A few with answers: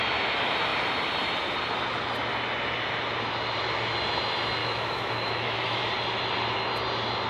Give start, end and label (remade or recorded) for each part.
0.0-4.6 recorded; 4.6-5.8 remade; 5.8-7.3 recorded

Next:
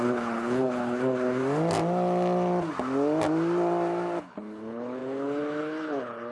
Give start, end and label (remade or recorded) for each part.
0.0-1.4 remade; 1.4-4.2 recorded; 4.2-6.3 remade

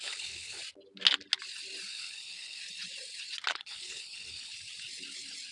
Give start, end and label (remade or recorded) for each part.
0.0-0.6 remade; 0.6-1.9 recorded; 1.9-2.6 remade; 2.6-3.5 recorded; 3.5-4.5 remade; 4.5-5.5 recorded

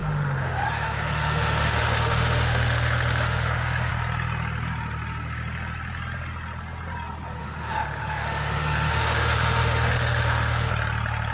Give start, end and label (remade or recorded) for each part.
0.0-3.9 remade; 3.9-7.4 recorded; 7.4-10.7 remade; 10.7-11.3 recorded